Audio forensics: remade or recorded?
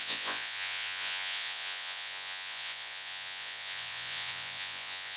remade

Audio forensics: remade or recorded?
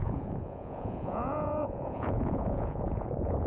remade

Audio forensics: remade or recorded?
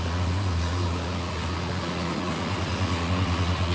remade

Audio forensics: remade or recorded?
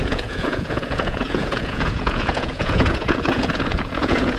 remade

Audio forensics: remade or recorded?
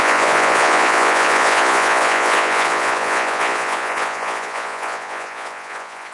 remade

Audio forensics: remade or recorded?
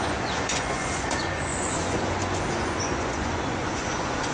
remade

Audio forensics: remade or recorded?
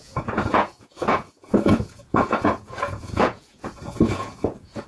remade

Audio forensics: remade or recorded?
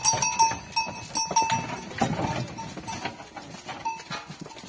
recorded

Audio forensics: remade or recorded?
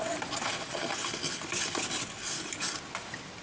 recorded